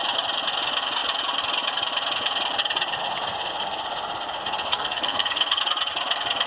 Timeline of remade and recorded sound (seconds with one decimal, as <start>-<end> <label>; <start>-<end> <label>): 0.0-4.7 recorded; 4.7-5.6 remade; 5.6-6.5 recorded